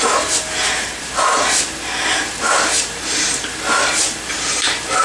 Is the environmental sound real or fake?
real